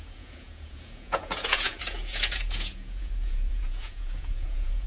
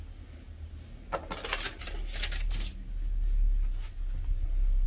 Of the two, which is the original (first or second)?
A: second